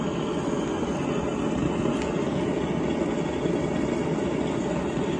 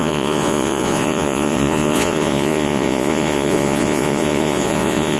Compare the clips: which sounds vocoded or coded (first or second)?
second